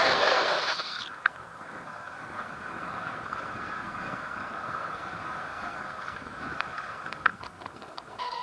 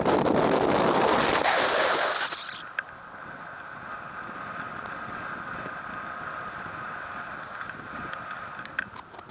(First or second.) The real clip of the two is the second